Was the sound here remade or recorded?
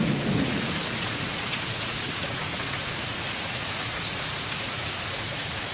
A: remade